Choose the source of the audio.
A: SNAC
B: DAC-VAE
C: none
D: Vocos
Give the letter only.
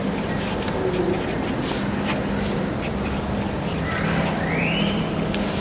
C